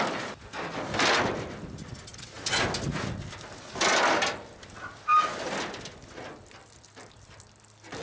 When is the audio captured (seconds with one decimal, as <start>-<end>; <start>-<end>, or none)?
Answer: 0.0-8.0